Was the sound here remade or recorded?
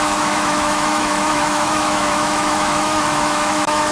remade